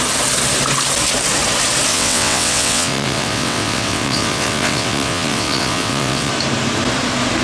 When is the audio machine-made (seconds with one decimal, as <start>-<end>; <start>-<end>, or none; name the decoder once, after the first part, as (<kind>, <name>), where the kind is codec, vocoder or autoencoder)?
1.9-6.3 (vocoder, WaveNeXt)